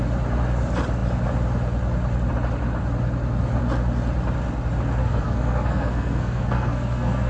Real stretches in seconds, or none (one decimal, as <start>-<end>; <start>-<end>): 0.0-5.0